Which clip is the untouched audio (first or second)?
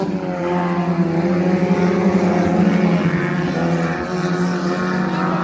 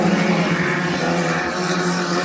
first